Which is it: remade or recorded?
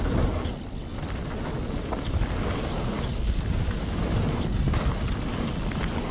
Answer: recorded